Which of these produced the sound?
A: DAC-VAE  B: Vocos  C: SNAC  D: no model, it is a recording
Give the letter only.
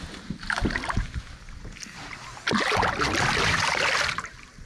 D